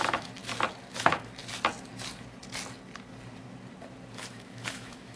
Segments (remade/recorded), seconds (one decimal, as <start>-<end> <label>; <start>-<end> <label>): 0.0-0.4 remade; 0.4-0.9 recorded; 0.9-1.4 remade; 1.4-4.3 recorded; 4.3-5.2 remade